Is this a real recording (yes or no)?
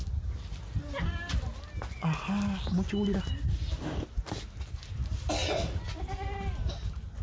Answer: yes